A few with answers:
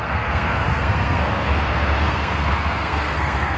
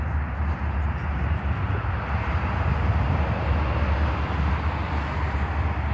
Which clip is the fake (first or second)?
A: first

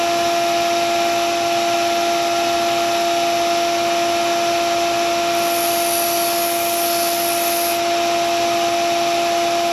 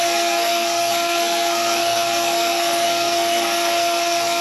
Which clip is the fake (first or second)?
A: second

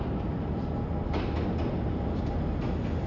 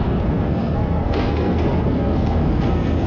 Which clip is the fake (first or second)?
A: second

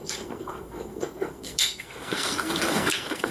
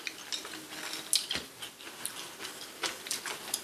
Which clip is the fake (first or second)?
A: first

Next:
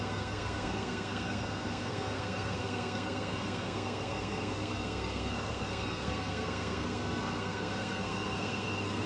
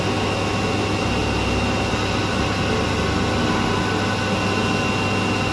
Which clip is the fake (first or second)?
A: first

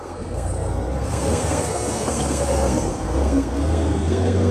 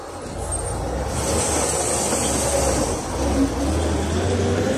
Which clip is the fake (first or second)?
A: first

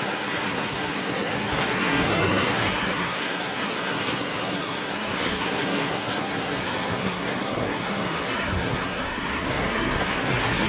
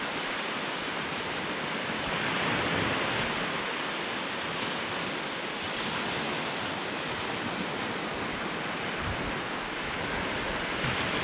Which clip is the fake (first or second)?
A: first